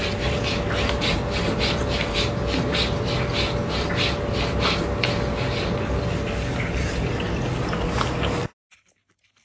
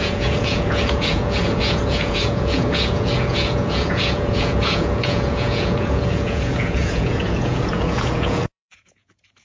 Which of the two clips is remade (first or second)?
second